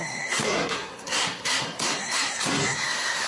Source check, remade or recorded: remade